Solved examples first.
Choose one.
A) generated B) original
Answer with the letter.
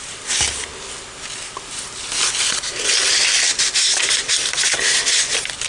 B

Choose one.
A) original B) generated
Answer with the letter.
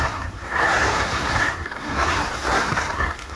B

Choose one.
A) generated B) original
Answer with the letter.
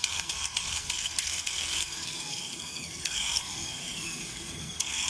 A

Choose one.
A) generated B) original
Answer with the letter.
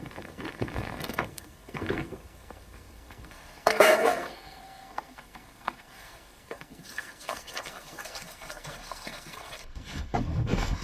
A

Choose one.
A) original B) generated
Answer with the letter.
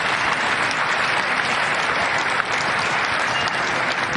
A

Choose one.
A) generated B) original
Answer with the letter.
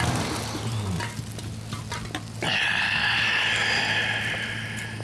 B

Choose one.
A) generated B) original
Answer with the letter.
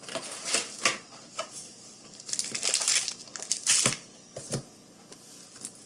B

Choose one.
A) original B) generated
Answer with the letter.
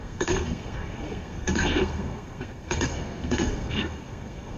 B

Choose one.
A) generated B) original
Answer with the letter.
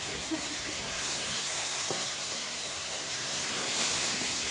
A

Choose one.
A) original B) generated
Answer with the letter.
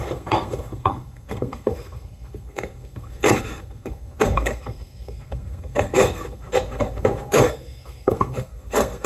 B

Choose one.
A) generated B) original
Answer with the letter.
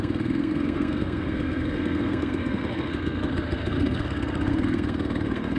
A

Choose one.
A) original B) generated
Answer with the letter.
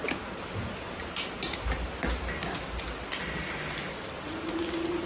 A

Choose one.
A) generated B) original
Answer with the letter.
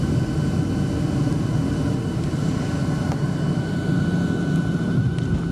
B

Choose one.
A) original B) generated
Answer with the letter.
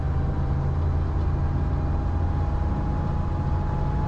A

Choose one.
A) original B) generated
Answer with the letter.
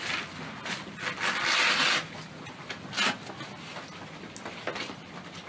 A